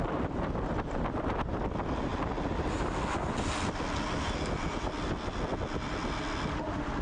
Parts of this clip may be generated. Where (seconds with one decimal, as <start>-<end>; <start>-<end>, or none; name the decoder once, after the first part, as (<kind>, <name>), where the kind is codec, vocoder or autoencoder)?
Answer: none